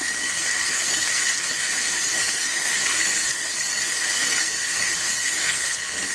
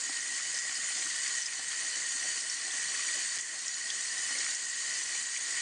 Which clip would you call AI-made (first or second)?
first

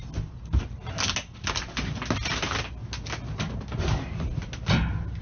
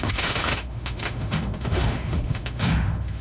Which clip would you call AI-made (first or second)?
second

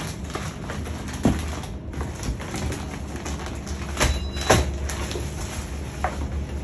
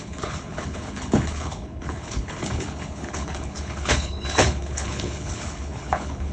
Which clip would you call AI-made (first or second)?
second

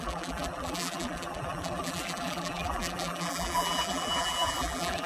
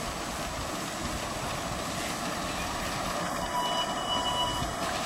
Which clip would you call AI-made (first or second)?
first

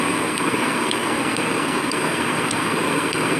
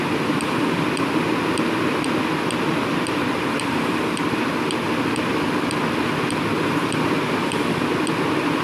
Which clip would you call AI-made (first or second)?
first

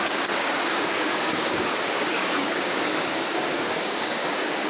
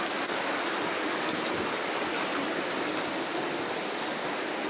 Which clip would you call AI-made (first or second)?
first